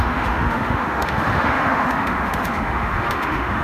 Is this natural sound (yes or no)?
no